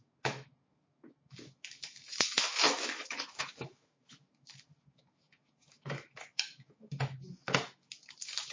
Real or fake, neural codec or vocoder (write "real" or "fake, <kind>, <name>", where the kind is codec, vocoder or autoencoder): fake, autoencoder, DAC-VAE